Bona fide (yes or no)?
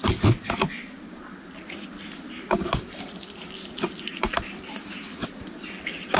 yes